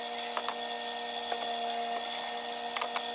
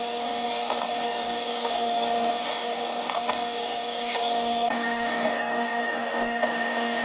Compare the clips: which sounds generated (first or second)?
second